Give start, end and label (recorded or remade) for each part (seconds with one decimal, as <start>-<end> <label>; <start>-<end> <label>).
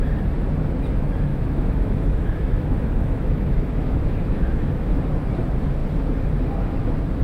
0.0-1.3 recorded; 1.3-5.0 remade; 5.0-7.2 recorded